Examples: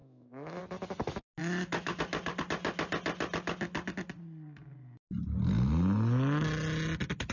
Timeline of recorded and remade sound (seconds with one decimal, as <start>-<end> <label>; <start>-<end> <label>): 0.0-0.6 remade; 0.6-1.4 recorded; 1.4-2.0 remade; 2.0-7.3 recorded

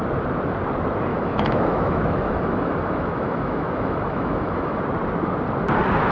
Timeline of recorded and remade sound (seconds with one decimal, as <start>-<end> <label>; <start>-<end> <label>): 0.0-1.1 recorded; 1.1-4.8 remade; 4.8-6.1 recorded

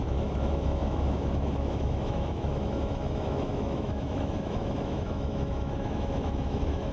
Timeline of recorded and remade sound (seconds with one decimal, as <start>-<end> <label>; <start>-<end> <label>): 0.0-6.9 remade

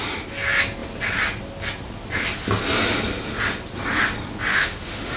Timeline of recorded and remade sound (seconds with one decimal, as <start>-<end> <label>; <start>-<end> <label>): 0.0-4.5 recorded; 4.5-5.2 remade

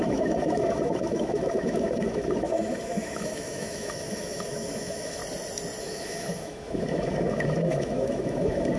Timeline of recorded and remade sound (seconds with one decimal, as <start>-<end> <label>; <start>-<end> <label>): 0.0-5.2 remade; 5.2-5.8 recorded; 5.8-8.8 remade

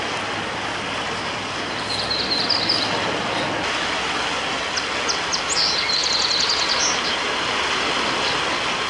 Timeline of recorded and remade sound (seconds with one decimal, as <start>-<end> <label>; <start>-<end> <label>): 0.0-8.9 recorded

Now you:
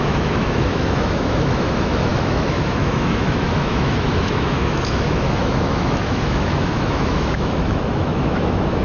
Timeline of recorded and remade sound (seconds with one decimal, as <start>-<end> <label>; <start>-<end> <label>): 0.0-8.8 remade

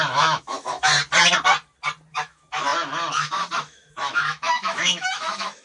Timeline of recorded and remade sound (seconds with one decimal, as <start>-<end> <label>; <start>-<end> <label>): 0.0-0.9 remade; 0.9-2.1 recorded; 2.1-5.6 remade